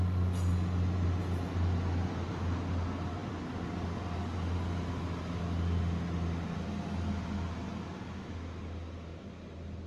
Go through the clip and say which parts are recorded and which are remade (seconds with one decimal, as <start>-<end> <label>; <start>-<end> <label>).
0.0-9.9 recorded